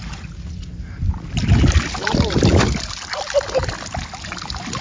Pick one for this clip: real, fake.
real